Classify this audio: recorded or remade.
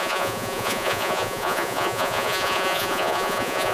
remade